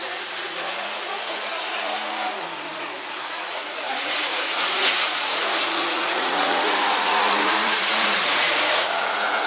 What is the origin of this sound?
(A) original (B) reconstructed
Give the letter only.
B